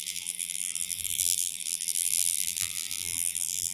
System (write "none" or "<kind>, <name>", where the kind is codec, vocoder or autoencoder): vocoder, BigVGAN v2